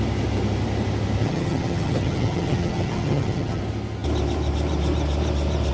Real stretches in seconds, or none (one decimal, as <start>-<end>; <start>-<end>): 0.0-1.2; 3.6-5.7